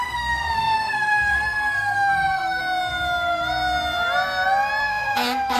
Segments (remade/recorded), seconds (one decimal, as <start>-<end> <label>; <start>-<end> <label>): 0.0-2.6 remade; 2.6-4.8 recorded; 4.8-5.6 remade

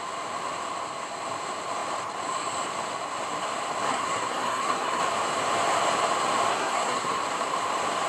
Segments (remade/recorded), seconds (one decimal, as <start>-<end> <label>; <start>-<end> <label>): 0.0-3.9 recorded; 3.9-5.0 remade; 5.0-6.5 recorded; 6.5-7.2 remade; 7.2-8.1 recorded

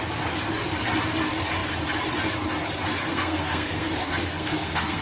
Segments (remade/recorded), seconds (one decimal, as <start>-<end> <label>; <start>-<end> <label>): 0.0-3.1 recorded; 3.1-5.0 remade

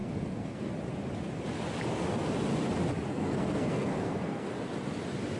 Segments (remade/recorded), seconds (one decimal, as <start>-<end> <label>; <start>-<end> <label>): 0.0-0.7 remade; 0.7-3.1 recorded; 3.1-4.5 remade; 4.5-5.4 recorded